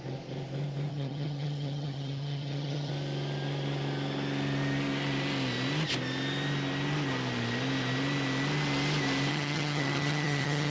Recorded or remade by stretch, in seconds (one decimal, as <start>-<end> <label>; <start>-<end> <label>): 0.0-0.9 recorded; 0.9-2.9 remade; 2.9-9.3 recorded; 9.3-10.7 remade

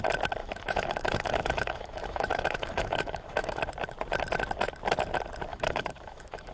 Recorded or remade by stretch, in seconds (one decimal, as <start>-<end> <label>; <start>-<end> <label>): 0.0-0.4 recorded; 0.4-3.6 remade; 3.6-5.5 recorded; 5.5-6.5 remade

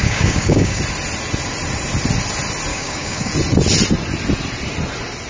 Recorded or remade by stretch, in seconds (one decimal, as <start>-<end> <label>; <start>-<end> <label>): 0.0-0.8 remade; 0.8-2.7 recorded; 2.7-3.3 remade; 3.3-5.3 recorded

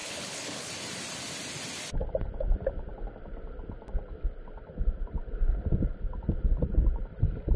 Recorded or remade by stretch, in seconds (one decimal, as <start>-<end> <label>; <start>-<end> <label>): 0.0-0.7 remade; 0.7-7.6 recorded